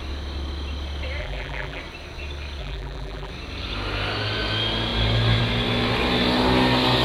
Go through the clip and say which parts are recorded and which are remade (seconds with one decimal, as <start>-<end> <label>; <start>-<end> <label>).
0.0-1.2 recorded; 1.2-1.8 remade; 1.8-2.6 recorded; 2.6-3.3 remade; 3.3-7.0 recorded